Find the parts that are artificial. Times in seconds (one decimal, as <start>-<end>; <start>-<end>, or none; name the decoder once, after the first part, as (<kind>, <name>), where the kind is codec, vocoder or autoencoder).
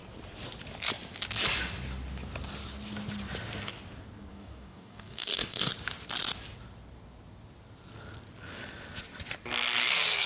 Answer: 4.3-5.7 (codec, DAC)